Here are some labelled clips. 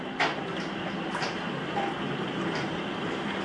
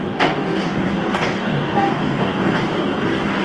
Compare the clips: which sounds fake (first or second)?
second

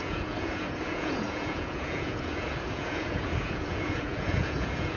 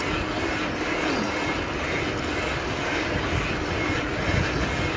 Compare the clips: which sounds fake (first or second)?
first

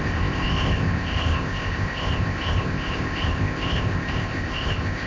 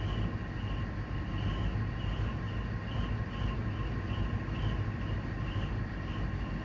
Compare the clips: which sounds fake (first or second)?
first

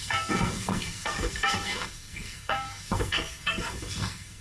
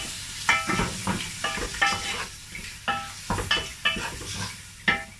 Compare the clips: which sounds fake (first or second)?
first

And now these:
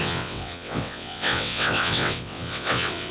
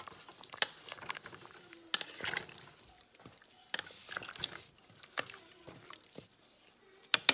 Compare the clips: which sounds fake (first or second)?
first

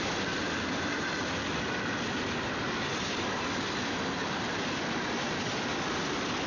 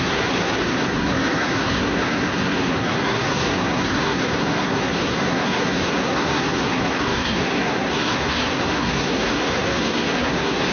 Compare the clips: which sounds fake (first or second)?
second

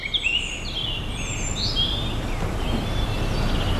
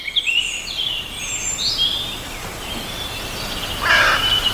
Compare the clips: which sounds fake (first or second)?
second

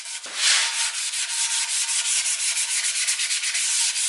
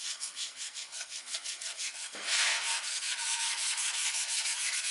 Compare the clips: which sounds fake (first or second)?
second